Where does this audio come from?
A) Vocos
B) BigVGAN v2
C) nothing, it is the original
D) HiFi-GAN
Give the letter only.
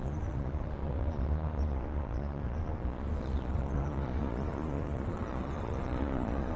A